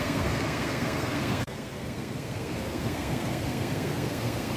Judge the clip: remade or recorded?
remade